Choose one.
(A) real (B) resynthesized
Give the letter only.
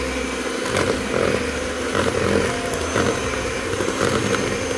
A